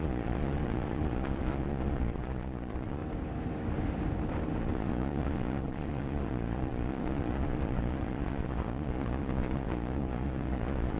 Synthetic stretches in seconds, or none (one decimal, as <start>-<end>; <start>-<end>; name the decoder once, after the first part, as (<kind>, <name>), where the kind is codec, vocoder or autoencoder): 0.0-3.0 (vocoder, Vocos); 4.6-11.0